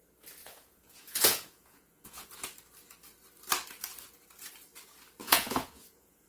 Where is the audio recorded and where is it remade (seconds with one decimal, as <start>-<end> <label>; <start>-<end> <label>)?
0.0-0.4 recorded; 0.4-2.3 remade; 2.3-5.2 recorded; 5.2-6.3 remade